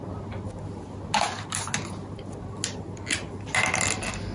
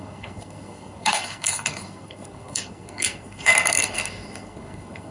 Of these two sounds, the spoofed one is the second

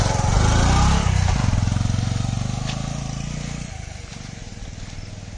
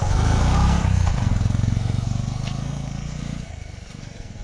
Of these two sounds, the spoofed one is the second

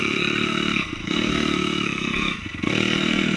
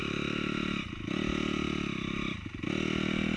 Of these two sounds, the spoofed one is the first